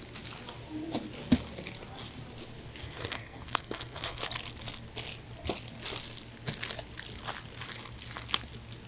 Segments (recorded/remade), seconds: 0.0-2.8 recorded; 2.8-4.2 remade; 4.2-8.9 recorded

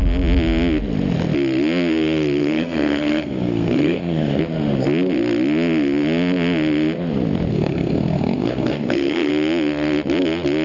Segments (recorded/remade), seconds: 0.0-2.4 recorded; 2.4-4.4 remade; 4.4-7.5 recorded; 7.5-9.3 remade; 9.3-10.6 recorded

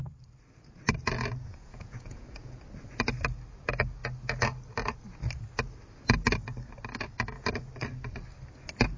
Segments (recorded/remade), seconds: 0.0-1.5 recorded; 1.5-2.6 remade; 2.6-9.0 recorded

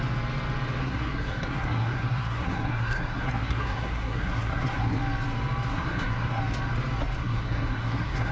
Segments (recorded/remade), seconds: 0.0-0.8 recorded; 0.8-5.0 remade; 5.0-5.7 recorded; 5.7-6.4 remade; 6.4-7.2 recorded; 7.2-8.3 remade

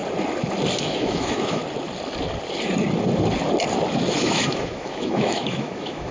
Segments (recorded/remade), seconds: 0.0-0.8 recorded; 0.8-1.6 remade; 1.6-4.2 recorded; 4.2-6.1 remade

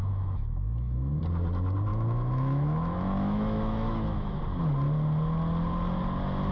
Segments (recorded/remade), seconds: 0.0-1.2 remade; 1.2-1.9 recorded; 1.9-4.4 remade; 4.4-6.5 recorded

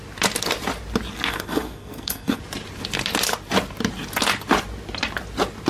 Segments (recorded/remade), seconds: 0.0-1.3 recorded; 1.3-2.4 remade; 2.4-5.7 recorded